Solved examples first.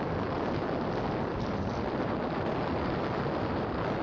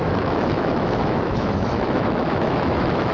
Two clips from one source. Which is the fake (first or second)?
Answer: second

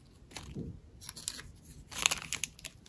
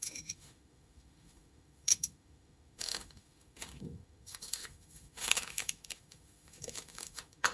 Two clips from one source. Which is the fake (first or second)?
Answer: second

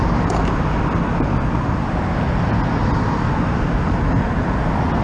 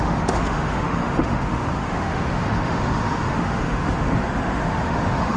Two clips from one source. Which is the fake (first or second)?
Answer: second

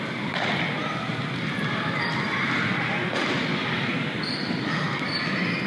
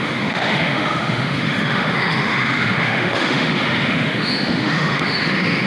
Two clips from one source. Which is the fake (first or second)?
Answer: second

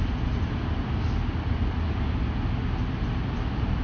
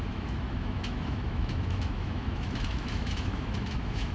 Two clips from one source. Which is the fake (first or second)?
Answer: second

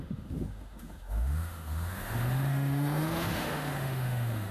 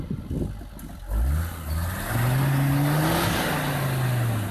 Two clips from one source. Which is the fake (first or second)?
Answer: first